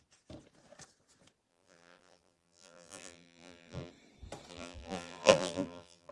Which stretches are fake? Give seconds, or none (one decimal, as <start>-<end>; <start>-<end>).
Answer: 1.5-3.9; 4.5-6.1